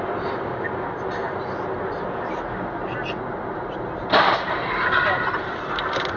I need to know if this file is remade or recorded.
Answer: recorded